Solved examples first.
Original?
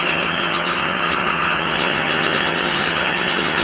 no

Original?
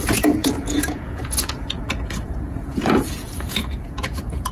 no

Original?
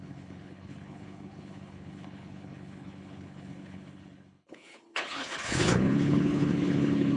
no